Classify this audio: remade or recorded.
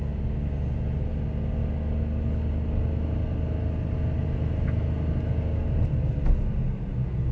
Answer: recorded